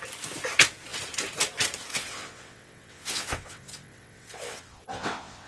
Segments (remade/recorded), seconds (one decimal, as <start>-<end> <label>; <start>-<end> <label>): 0.0-1.9 recorded; 1.9-5.5 remade